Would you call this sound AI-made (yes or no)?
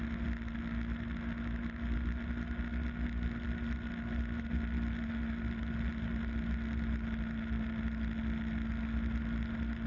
no